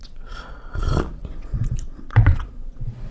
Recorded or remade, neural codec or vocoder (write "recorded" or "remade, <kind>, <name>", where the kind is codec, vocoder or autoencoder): remade, vocoder, Vocos